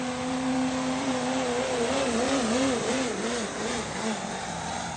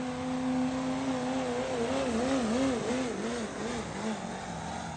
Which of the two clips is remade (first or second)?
first